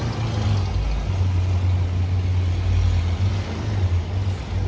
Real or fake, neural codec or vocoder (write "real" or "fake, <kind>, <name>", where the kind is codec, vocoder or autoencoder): real